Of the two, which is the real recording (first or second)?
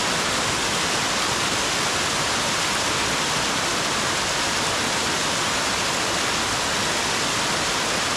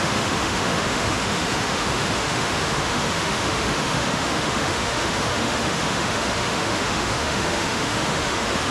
first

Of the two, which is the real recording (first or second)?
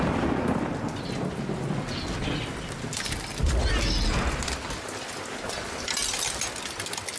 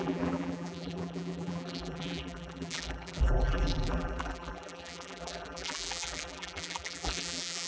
first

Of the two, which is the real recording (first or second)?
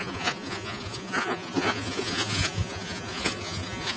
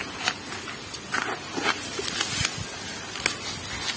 second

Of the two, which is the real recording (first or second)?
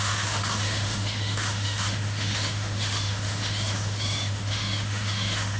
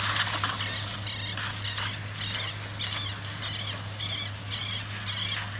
second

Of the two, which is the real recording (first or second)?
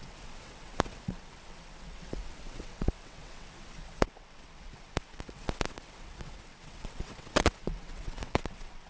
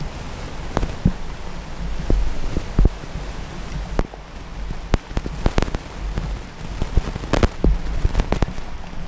second